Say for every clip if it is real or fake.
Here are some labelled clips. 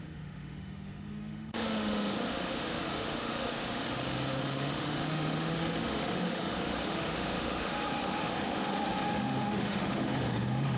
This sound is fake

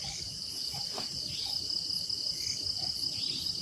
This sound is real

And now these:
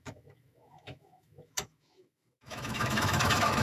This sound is fake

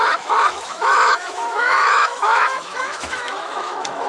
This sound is fake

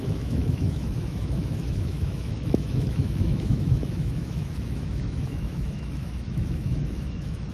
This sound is fake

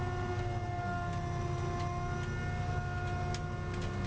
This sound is real